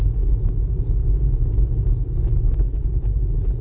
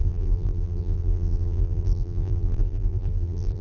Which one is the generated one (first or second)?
second